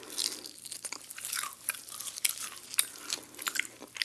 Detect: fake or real real